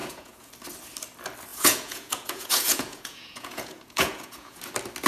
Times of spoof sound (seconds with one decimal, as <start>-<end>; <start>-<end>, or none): 0.0-0.5; 1.5-4.6